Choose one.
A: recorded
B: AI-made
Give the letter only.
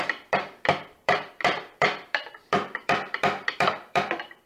B